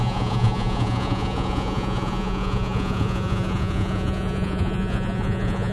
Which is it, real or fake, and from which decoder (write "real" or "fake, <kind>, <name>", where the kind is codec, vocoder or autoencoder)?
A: fake, vocoder, Vocos